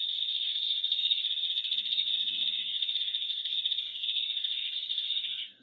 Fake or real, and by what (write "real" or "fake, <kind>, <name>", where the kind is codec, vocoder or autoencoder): fake, codec, SNAC